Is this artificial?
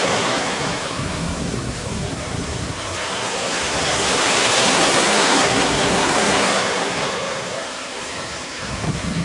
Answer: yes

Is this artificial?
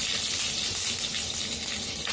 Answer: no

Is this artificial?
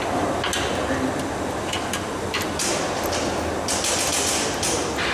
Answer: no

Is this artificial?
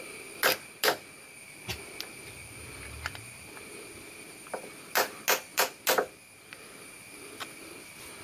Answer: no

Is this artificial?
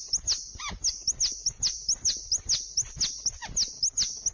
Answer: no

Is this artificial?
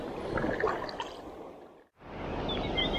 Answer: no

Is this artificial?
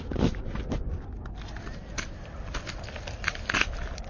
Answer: no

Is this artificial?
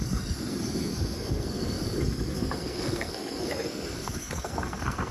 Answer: yes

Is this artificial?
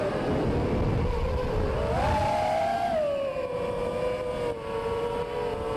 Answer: no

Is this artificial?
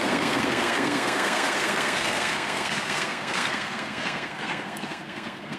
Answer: yes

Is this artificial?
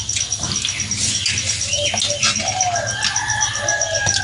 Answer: no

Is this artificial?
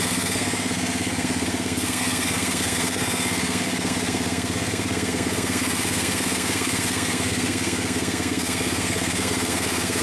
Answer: yes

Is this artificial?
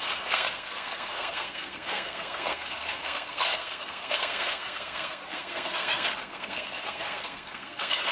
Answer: yes